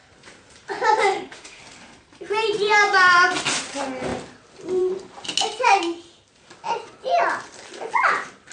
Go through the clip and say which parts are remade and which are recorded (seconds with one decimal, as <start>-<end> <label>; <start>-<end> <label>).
0.0-1.1 recorded; 1.1-1.6 remade; 1.6-8.5 recorded